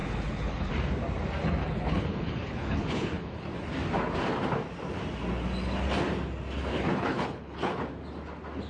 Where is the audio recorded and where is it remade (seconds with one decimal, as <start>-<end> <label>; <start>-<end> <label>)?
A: 0.0-0.7 remade; 0.7-1.6 recorded; 1.6-3.7 remade; 3.7-6.7 recorded; 6.7-7.8 remade; 7.8-8.7 recorded